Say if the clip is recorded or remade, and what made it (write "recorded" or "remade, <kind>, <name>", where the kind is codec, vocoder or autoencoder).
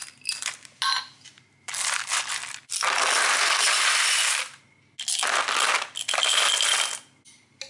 recorded